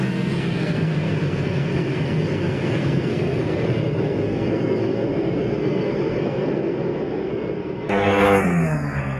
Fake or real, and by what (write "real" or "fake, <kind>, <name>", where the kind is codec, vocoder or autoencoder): fake, codec, SNAC